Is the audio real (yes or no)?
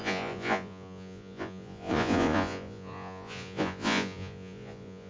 no